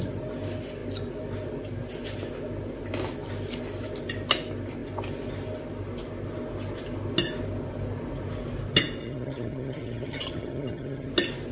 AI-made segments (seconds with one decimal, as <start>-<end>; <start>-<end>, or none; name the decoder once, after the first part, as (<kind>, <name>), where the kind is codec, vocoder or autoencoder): 9.0-11.1 (vocoder, HiFi-GAN)